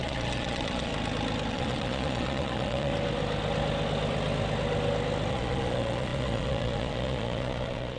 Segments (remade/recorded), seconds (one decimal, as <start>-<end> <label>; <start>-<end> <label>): 0.0-0.9 remade; 0.9-1.5 recorded; 1.5-2.9 remade; 2.9-5.3 recorded; 5.3-8.0 remade